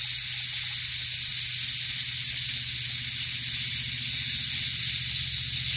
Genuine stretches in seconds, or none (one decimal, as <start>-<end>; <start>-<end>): 0.0-5.8